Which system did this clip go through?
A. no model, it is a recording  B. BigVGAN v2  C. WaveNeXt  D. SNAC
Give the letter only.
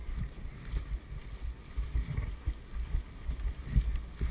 A